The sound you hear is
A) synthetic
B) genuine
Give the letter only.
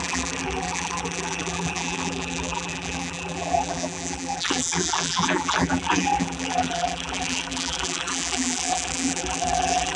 A